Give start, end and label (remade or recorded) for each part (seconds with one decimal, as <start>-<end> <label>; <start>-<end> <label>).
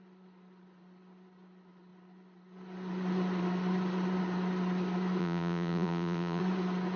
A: 0.0-5.2 recorded; 5.2-6.4 remade; 6.4-7.0 recorded